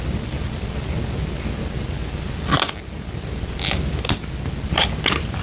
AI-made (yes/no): no